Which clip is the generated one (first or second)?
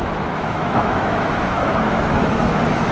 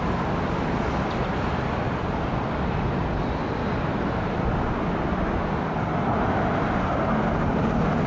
first